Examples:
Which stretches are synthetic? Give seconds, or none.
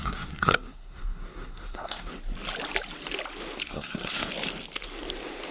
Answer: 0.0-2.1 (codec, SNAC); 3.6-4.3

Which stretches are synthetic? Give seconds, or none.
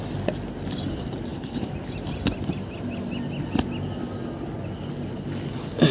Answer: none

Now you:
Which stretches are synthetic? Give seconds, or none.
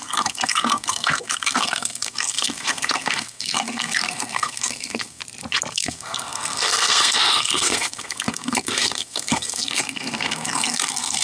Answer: 0.0-5.2 (codec, SNAC); 5.7-11.2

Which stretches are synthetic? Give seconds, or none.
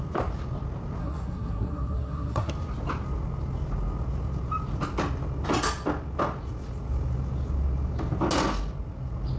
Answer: 1.0-2.5 (codec, SNAC)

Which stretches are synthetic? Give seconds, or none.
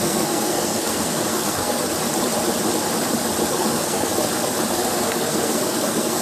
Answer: 0.0-1.9 (codec, SNAC); 3.5-4.1; 4.7-6.2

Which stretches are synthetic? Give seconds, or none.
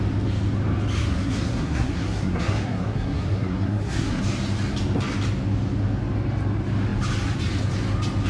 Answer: 1.0-4.2 (codec, SNAC)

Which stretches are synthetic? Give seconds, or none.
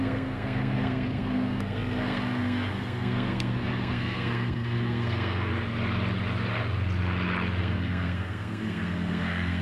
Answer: 0.0-5.5 (codec, SNAC); 7.6-9.6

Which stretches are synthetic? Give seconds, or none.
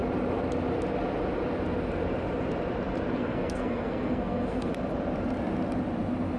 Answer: 3.2-4.7 (codec, SNAC)